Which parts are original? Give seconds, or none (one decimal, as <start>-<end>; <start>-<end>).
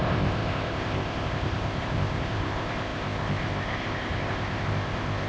none